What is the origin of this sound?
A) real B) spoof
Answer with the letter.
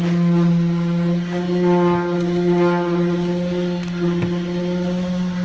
A